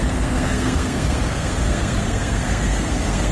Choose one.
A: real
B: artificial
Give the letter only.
B